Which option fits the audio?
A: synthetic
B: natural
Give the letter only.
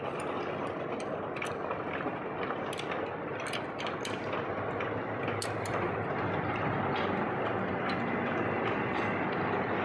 B